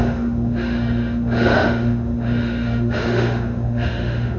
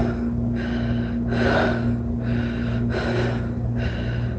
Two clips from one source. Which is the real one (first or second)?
second